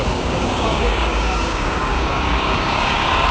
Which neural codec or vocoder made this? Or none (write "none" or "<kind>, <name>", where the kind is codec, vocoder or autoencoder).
codec, DAC